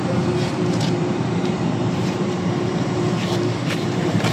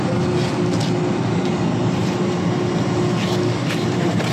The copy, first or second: first